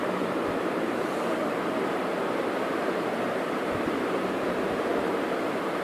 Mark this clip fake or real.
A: fake